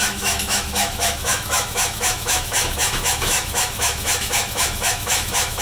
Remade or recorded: remade